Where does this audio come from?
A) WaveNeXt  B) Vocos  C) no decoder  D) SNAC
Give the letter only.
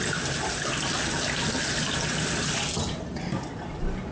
C